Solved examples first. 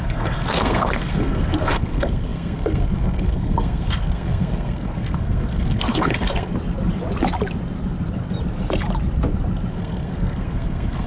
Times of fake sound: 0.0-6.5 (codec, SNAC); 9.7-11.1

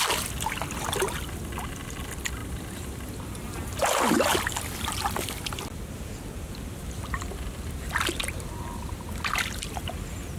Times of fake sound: none

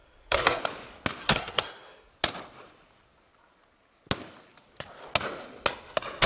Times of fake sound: 0.0-0.6 (codec, SNAC); 1.2-2.1

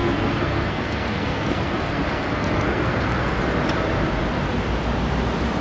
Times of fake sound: 0.0-3.4 (codec, SNAC)